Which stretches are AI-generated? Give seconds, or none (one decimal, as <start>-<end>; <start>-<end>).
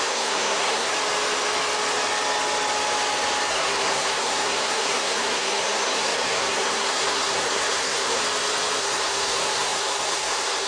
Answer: 0.0-0.9; 3.5-8.2; 8.8-10.7